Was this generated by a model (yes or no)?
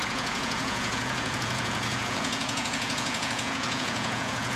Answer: yes